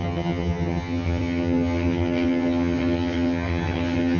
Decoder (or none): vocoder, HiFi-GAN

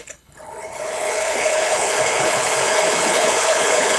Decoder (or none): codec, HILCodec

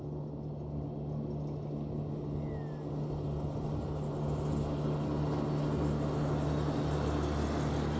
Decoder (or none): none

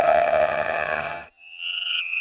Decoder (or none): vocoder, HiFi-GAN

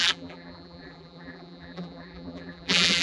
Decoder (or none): vocoder, BigVGAN v2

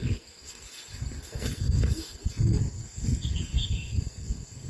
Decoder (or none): codec, SNAC